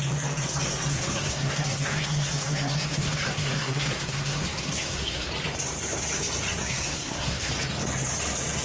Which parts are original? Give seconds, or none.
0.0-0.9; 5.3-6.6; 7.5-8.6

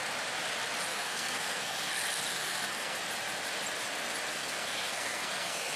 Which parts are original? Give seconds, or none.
0.0-0.9; 1.9-2.3; 3.0-4.3